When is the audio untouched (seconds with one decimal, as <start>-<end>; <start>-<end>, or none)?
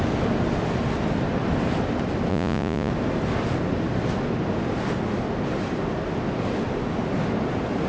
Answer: 0.0-2.3; 2.9-7.9